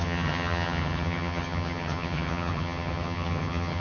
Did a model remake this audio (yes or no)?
yes